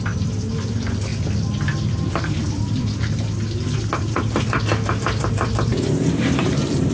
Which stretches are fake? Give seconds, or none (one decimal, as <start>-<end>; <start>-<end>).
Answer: 0.0-1.1; 2.1-6.9